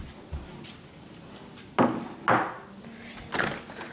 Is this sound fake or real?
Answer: real